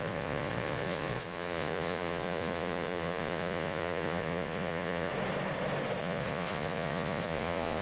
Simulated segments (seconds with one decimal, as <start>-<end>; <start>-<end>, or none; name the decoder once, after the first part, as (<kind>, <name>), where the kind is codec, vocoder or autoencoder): 0.0-5.1 (vocoder, Vocos); 6.0-7.8